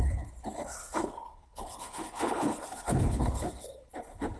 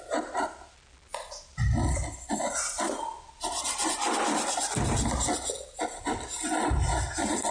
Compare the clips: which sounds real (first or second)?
second